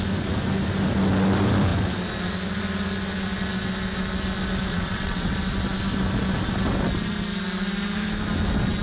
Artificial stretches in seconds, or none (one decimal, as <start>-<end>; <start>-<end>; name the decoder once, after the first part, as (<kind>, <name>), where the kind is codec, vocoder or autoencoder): 4.7-5.3 (vocoder, WaveNeXt)